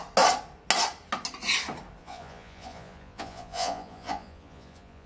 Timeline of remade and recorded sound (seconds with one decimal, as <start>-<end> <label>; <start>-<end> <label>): 0.0-2.0 recorded; 2.0-5.1 remade